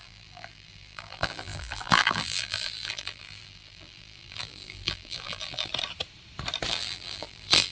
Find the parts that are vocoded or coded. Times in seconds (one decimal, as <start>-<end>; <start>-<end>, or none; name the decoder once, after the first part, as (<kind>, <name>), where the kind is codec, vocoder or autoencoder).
0.0-5.7 (vocoder, BigVGAN v2); 6.7-7.7